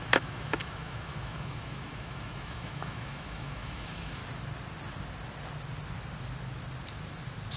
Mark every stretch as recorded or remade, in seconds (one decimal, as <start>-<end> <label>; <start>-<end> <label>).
0.0-4.2 remade; 4.2-7.6 recorded